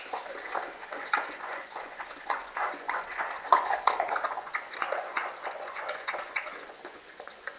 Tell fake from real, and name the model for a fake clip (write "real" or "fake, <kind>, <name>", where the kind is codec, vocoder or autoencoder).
fake, vocoder, Vocos